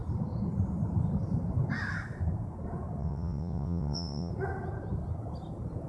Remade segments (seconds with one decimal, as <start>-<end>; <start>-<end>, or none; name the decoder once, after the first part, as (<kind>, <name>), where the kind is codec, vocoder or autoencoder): 3.0-4.3 (vocoder, WaveNeXt)